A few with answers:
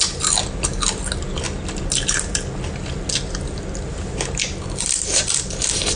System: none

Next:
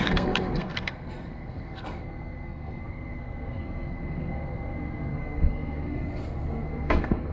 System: codec, SNAC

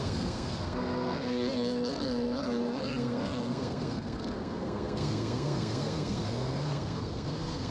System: codec, SNAC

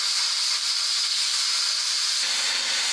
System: none